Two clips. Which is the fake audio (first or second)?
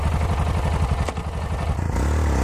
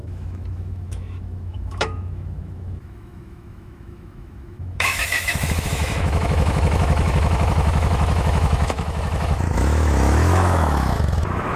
second